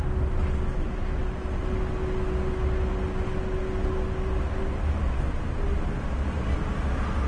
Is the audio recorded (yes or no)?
yes